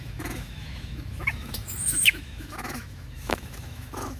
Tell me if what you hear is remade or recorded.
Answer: remade